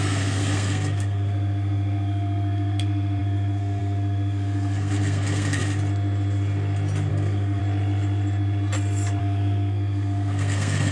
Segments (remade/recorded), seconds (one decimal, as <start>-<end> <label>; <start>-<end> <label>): 0.0-5.6 remade; 5.6-7.1 recorded; 7.1-7.6 remade; 7.6-9.2 recorded; 9.2-10.9 remade